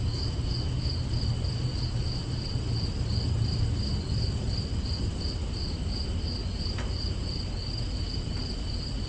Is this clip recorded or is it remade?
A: recorded